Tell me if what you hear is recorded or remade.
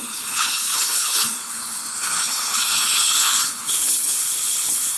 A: remade